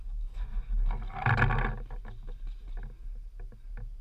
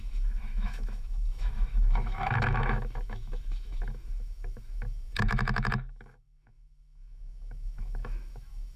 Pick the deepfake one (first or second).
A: second